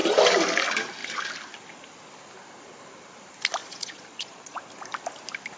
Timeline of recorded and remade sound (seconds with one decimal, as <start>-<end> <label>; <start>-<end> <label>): 0.0-3.6 recorded; 3.6-4.7 remade; 4.7-5.6 recorded